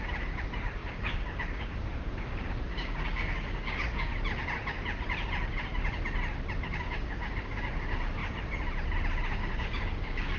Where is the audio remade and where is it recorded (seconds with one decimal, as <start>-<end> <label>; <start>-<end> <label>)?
0.0-4.1 remade; 4.1-6.6 recorded; 6.6-8.2 remade; 8.2-9.3 recorded; 9.3-10.4 remade